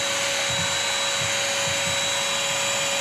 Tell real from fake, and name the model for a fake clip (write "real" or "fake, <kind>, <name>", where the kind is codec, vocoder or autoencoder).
real